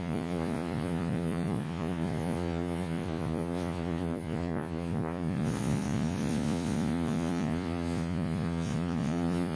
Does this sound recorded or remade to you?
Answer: remade